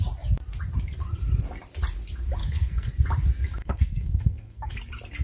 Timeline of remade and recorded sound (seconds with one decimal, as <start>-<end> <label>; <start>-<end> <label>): 0.0-2.4 recorded; 2.4-2.9 remade; 2.9-3.6 recorded; 3.6-4.7 remade; 4.7-5.2 recorded